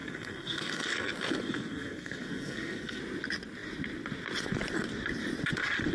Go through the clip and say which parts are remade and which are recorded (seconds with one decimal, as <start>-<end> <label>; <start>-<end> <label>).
0.0-3.0 remade; 3.0-5.9 recorded